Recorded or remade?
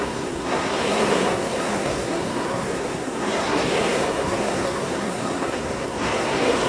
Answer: remade